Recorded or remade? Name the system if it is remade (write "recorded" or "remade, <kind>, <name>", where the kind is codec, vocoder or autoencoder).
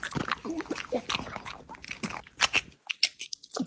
recorded